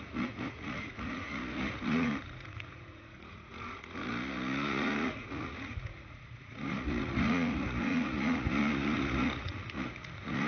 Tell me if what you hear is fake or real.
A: fake